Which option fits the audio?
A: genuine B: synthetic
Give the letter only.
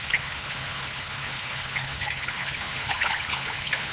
B